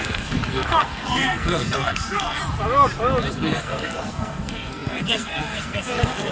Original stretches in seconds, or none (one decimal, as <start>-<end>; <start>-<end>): 2.4-3.3